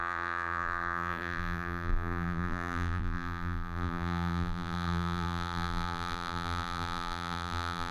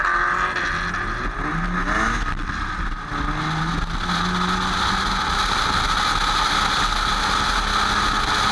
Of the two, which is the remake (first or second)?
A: first